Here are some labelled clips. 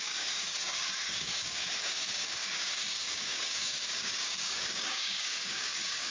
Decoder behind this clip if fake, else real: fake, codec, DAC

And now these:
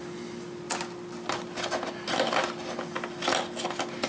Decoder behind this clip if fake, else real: real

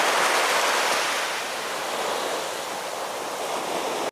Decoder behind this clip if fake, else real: real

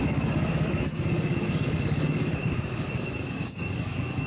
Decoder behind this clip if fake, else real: fake, codec, DAC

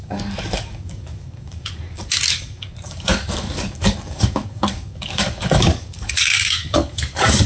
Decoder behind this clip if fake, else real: fake, codec, DAC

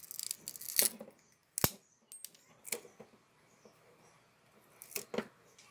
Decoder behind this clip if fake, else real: real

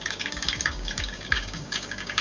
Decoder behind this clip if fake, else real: fake, codec, DAC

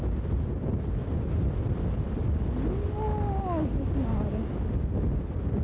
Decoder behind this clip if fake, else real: real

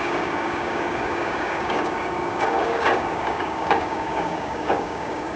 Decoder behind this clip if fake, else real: fake, codec, DAC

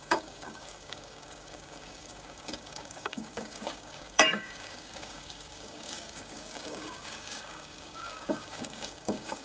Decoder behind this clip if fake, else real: fake, codec, DAC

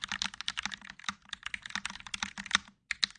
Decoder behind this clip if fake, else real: real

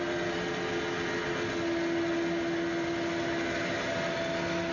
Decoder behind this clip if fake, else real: real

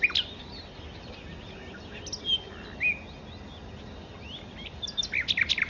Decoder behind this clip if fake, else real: real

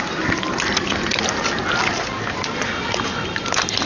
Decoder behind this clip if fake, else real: real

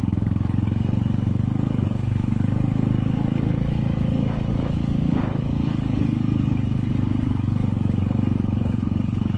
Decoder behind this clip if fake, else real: fake, codec, DAC